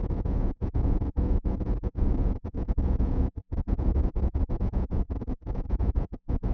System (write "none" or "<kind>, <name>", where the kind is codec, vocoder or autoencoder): vocoder, Vocos